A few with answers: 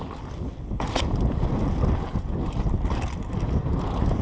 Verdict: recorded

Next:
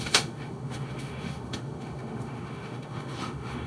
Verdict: remade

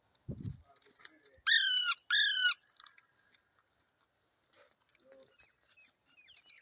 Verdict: recorded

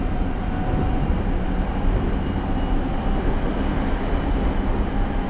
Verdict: recorded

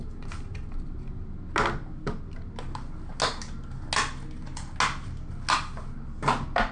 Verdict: recorded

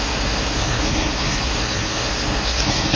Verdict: remade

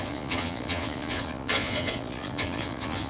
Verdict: remade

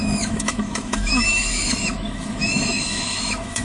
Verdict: remade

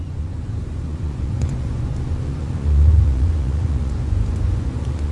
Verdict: remade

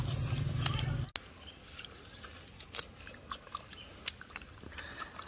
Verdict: recorded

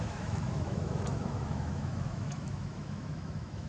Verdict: remade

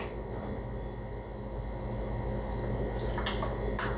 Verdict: recorded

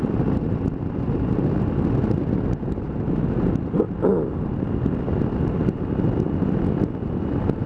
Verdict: recorded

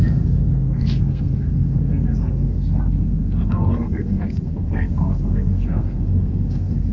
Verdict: remade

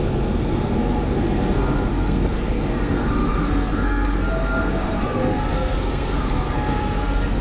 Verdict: remade